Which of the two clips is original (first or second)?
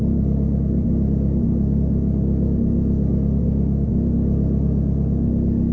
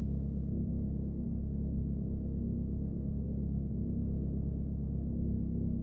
first